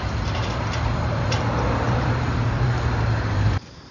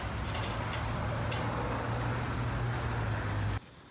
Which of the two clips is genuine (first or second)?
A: second